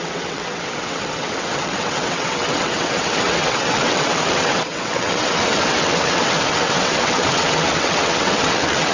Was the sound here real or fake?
fake